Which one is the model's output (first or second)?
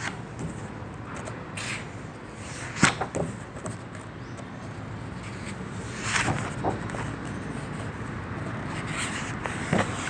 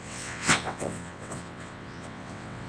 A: second